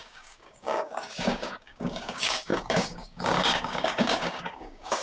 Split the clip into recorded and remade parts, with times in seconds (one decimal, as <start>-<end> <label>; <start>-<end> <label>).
0.0-5.0 remade